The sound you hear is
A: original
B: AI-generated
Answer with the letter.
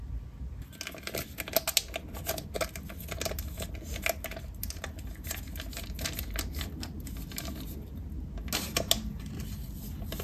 A